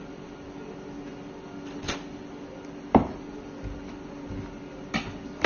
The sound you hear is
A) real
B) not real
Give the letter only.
A